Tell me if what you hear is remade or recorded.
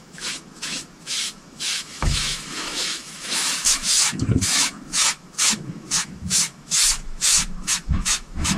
remade